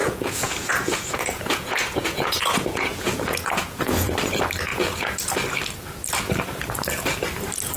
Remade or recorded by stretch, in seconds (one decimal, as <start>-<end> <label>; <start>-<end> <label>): 0.0-4.1 remade; 4.1-4.7 recorded; 4.7-5.3 remade; 5.3-7.8 recorded

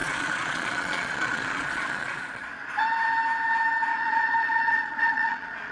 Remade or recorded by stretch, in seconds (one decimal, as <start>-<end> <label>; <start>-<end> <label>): 0.0-2.5 remade; 2.5-3.9 recorded; 3.9-5.7 remade

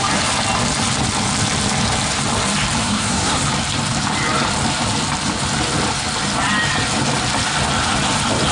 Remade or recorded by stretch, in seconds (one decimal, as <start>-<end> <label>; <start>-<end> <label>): 0.0-2.8 recorded; 2.8-3.4 remade; 3.4-8.5 recorded

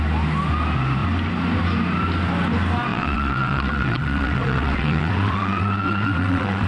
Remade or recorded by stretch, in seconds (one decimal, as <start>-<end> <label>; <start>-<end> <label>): 0.0-2.9 recorded; 2.9-6.7 remade

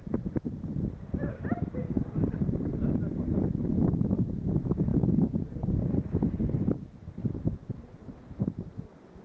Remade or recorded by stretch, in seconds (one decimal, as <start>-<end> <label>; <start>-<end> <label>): 0.0-7.2 recorded; 7.2-8.7 remade; 8.7-9.2 recorded

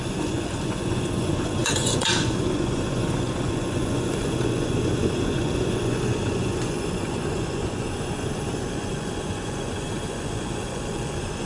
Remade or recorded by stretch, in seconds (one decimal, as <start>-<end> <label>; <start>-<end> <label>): 0.0-11.5 remade

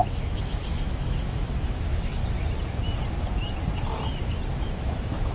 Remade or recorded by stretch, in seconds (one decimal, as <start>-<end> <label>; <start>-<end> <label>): 0.0-2.2 remade; 2.2-4.5 recorded; 4.5-5.3 remade

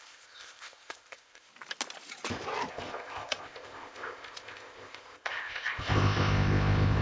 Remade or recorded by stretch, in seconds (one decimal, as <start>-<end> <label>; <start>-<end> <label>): 0.0-1.5 remade; 1.5-2.7 recorded; 2.7-7.0 remade